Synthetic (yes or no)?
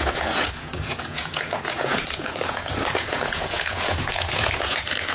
yes